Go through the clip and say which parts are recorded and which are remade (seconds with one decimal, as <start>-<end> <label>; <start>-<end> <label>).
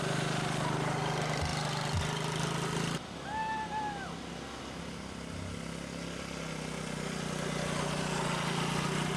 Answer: 0.0-9.2 recorded